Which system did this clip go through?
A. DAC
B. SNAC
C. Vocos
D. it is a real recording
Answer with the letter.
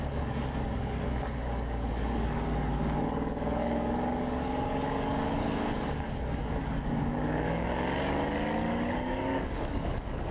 A